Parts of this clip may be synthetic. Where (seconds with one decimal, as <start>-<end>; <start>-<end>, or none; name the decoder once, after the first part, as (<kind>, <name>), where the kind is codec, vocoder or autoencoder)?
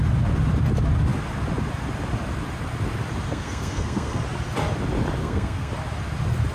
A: 3.3-4.2 (codec, SNAC); 5.2-5.7